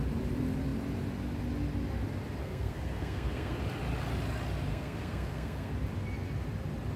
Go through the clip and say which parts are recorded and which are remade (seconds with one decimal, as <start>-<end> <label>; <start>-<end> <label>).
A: 0.0-2.4 recorded; 2.4-3.6 remade; 3.6-4.7 recorded; 4.7-5.7 remade; 5.7-7.0 recorded